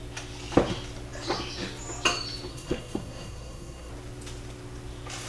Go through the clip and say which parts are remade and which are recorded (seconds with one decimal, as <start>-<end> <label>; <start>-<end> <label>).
0.0-2.5 recorded; 2.5-3.9 remade; 3.9-5.3 recorded